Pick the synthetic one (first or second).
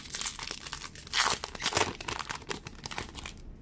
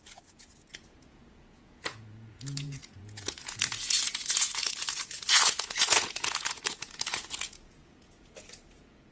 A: second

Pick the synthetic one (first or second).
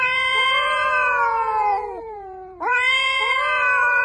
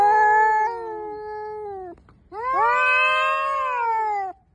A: first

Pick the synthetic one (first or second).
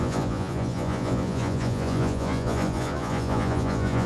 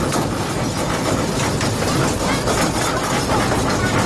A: first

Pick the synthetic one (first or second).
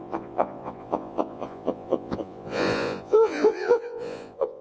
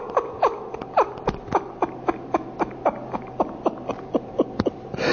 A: first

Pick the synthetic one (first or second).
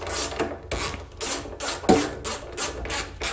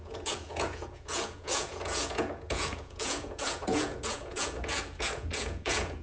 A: second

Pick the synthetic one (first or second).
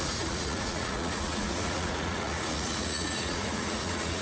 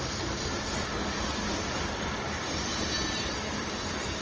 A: first